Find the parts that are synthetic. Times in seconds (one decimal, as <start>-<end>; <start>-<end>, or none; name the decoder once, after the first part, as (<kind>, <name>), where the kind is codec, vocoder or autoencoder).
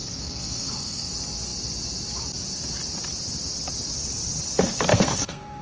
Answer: 0.0-1.1 (codec, SNAC); 4.9-5.6